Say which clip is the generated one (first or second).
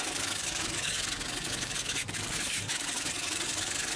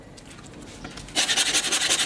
first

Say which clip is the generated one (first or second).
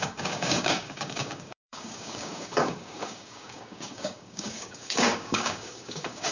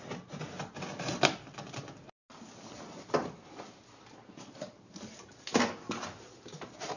first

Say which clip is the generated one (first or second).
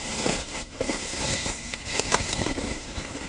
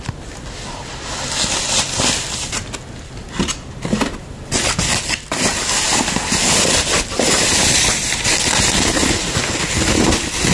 first